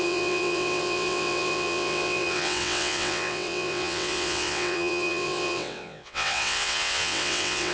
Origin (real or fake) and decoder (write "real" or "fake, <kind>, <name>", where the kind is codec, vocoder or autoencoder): fake, vocoder, WaveNeXt